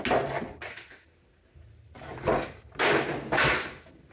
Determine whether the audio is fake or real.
real